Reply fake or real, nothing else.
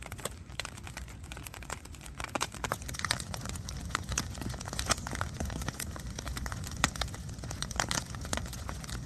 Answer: fake